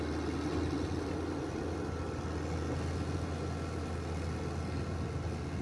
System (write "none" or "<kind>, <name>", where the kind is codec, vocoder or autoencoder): none